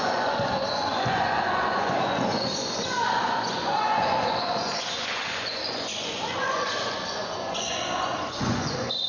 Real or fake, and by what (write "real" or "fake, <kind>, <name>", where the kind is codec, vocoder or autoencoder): fake, vocoder, Vocos